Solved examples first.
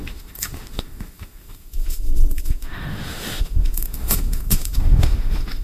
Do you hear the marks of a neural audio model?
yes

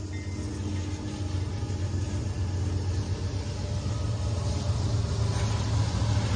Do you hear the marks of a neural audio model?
no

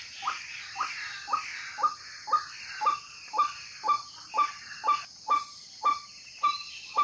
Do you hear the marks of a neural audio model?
no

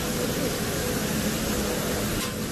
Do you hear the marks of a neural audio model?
no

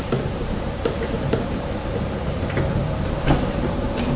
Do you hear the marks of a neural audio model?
yes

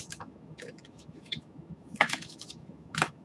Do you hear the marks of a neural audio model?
yes